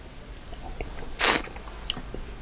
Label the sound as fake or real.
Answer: real